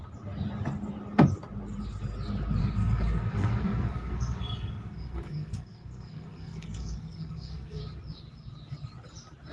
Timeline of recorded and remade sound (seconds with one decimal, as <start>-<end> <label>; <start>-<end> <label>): 0.0-2.6 recorded; 2.6-7.8 remade; 7.8-9.5 recorded